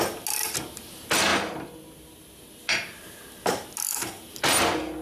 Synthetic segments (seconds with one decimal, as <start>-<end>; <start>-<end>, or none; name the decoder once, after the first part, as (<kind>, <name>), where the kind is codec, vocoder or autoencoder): none